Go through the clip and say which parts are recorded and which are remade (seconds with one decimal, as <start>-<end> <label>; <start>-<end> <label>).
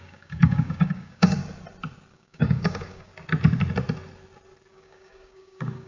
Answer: 0.0-1.4 remade; 1.4-2.1 recorded; 2.1-3.1 remade; 3.1-4.7 recorded; 4.7-5.9 remade